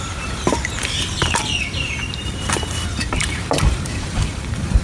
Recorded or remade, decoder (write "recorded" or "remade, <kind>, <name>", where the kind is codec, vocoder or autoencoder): remade, vocoder, BigVGAN v2